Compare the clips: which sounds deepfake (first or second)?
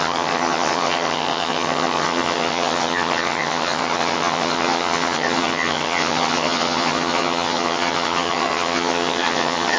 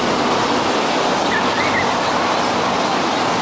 first